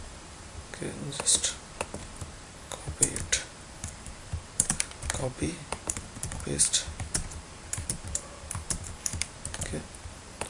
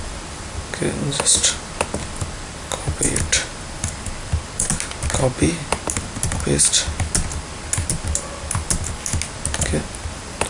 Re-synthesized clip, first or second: first